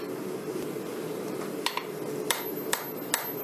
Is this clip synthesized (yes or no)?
no